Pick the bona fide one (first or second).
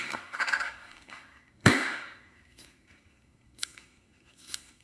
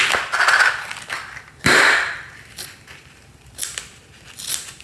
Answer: second